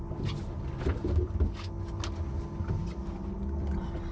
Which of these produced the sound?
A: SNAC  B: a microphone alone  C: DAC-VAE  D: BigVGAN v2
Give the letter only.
B